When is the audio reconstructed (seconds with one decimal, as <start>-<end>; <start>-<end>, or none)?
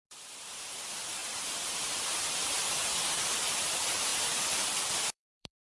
0.0-1.2; 3.1-5.7